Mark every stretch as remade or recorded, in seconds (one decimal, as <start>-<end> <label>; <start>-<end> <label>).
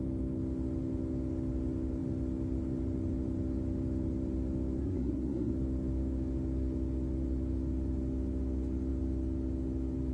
0.0-4.8 recorded; 4.8-5.5 remade; 5.5-10.1 recorded